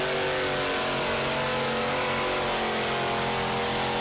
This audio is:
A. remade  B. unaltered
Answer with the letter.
B